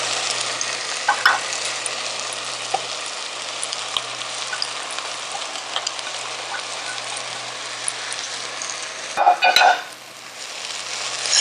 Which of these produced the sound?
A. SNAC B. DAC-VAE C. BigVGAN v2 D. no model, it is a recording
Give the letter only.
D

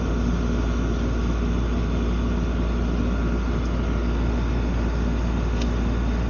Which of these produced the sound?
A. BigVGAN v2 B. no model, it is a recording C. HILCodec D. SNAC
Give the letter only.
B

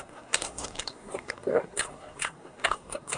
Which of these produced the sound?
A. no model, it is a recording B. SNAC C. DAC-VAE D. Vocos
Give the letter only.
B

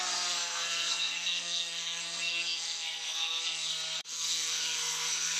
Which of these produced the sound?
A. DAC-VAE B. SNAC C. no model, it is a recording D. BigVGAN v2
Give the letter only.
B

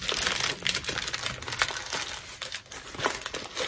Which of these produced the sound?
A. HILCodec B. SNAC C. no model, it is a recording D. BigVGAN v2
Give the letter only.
C